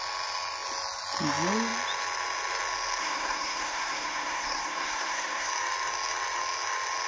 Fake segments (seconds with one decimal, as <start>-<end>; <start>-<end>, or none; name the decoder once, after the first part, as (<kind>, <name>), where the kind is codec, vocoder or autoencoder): 3.0-5.5 (codec, SNAC)